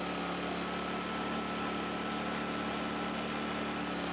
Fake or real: real